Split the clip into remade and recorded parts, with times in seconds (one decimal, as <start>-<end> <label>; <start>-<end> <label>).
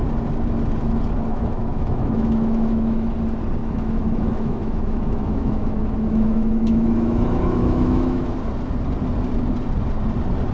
0.0-1.3 recorded; 1.3-3.1 remade; 3.1-3.6 recorded; 3.6-8.3 remade; 8.3-10.5 recorded